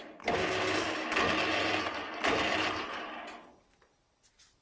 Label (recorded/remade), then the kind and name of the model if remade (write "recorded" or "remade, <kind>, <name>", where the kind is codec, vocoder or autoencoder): recorded